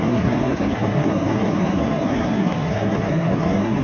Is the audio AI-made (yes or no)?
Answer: yes